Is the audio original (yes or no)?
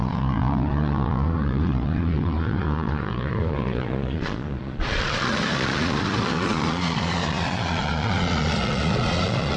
no